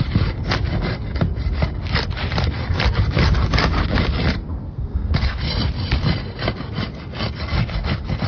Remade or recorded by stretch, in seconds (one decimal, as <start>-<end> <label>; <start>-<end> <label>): 0.0-4.5 recorded; 4.5-5.4 remade; 5.4-8.3 recorded